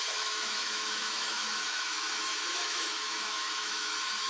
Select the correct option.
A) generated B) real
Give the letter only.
A